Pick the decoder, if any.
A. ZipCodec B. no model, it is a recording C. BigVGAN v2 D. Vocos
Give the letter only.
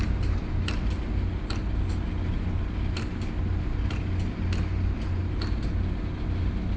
B